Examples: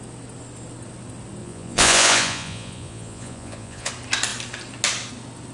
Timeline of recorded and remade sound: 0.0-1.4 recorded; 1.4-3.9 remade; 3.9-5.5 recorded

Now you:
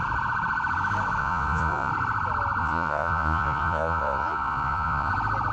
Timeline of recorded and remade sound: 0.0-1.2 recorded; 1.2-1.9 remade; 1.9-2.6 recorded; 2.6-5.1 remade; 5.1-5.5 recorded

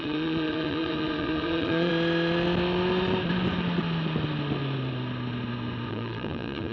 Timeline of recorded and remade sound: 0.0-1.9 remade; 1.9-5.9 recorded; 5.9-6.7 remade

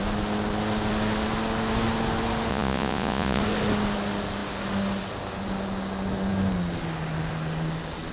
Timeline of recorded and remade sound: 0.0-2.5 recorded; 2.5-3.4 remade; 3.4-8.1 recorded